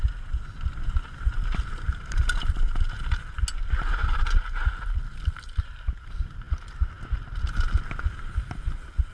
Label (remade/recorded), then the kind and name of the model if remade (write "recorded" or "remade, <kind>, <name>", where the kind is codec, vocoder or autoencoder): recorded